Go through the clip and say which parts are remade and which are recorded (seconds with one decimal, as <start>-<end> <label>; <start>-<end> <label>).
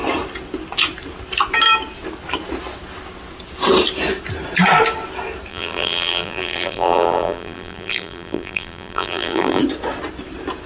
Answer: 0.0-5.5 recorded; 5.5-9.6 remade; 9.6-10.7 recorded